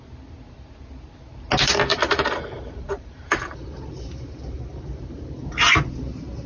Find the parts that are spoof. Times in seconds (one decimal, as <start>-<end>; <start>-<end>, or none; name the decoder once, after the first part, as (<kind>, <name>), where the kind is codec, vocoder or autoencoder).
1.9-5.8 (vocoder, BigVGAN v2)